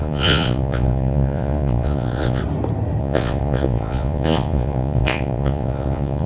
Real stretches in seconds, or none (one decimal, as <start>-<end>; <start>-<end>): 2.4-3.0